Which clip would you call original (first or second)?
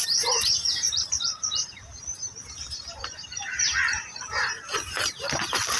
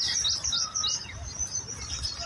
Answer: second